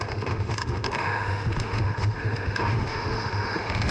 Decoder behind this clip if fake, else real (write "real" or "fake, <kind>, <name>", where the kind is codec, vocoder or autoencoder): fake, autoencoder, DAC-VAE